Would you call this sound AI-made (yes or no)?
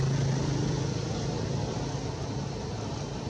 no